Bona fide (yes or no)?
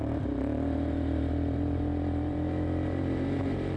no